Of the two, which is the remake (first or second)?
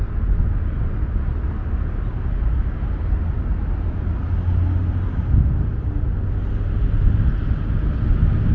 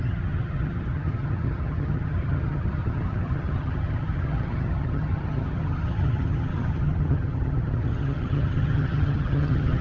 second